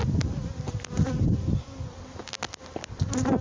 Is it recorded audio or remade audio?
recorded